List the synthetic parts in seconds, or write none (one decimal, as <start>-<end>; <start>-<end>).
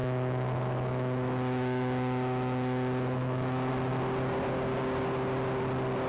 0.0-3.7